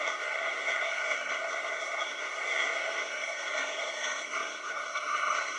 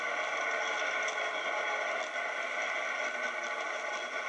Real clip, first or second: second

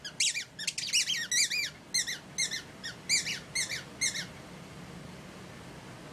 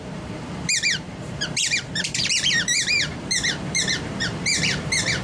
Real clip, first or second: first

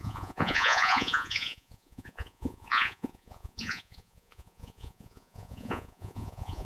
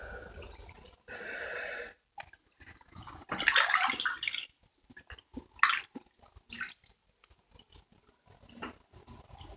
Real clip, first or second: second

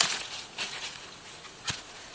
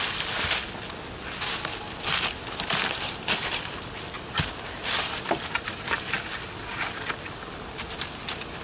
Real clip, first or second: second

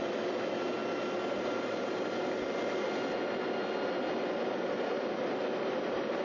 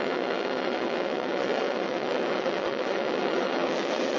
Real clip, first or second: first